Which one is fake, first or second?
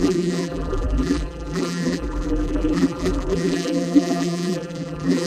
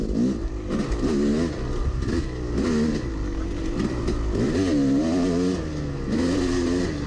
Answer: first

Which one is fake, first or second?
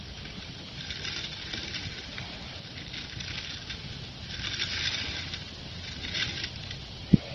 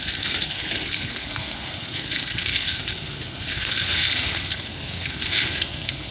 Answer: second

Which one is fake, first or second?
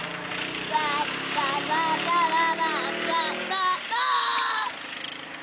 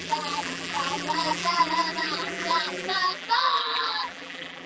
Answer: second